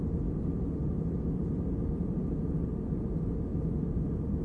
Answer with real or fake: real